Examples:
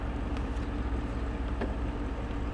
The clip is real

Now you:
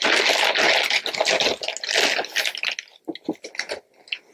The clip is real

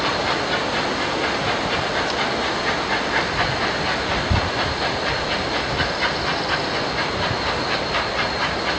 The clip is real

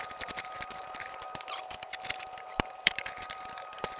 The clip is fake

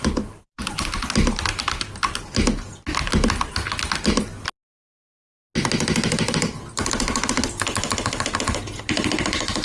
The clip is real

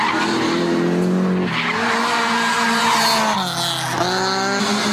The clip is real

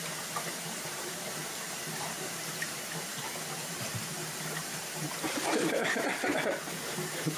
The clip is fake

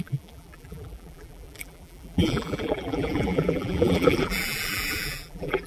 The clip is fake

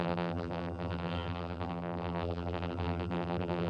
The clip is fake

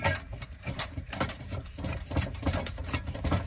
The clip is fake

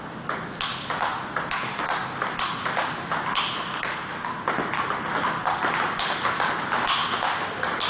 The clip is real